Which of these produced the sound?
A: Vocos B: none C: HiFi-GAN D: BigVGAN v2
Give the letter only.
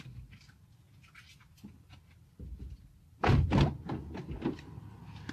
B